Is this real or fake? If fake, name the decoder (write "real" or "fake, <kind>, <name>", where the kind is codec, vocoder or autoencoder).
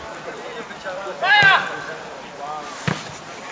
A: real